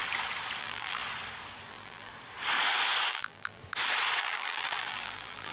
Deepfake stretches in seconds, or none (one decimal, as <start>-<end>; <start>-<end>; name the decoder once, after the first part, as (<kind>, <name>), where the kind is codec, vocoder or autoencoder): 0.6-1.0 (vocoder, BigVGAN v2); 1.7-2.1; 3.1-3.6; 4.2-5.5